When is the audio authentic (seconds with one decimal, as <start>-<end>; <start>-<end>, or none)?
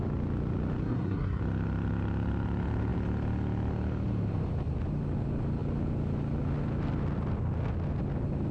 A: 0.0-0.8; 1.4-8.5